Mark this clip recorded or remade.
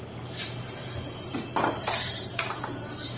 remade